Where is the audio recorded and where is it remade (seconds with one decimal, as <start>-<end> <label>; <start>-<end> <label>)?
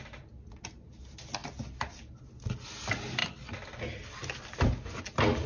0.0-5.5 recorded